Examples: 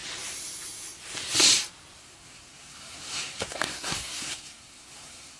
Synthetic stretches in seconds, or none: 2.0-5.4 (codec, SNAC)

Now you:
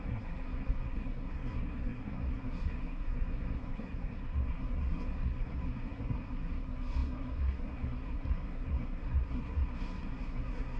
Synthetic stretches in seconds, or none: 0.0-10.8 (codec, SNAC)

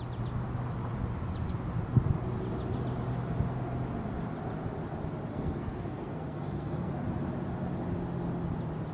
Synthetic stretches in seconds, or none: 5.3-6.9 (codec, SNAC)

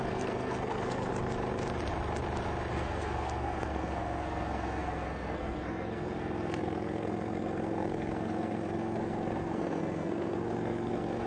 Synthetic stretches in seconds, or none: 0.0-1.1 (codec, SNAC); 2.7-11.3

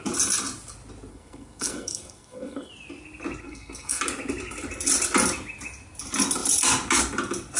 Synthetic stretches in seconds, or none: 1.1-2.7 (codec, SNAC); 3.4-4.0